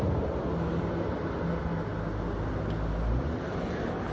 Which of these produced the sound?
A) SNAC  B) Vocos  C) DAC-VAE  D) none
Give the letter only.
D